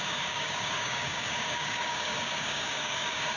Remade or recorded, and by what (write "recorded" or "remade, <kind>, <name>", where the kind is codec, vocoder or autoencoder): remade, codec, DAC